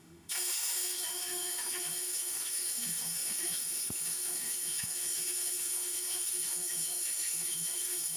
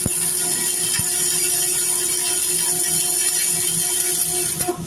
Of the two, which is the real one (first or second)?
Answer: second